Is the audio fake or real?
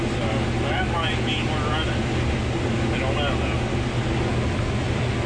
real